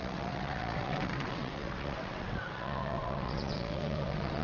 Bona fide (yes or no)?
no